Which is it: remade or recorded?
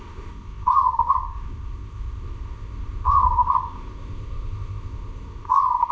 remade